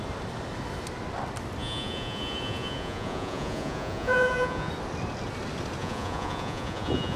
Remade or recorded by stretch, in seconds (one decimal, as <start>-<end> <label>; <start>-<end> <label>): 0.0-1.6 recorded; 1.6-4.7 remade; 4.7-5.8 recorded; 5.8-7.2 remade